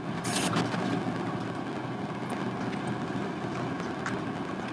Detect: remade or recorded recorded